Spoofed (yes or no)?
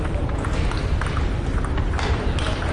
yes